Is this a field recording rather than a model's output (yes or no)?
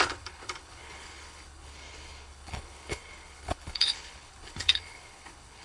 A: no